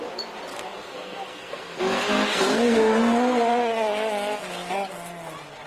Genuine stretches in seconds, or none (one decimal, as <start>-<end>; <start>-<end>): 0.0-0.5; 3.9-5.7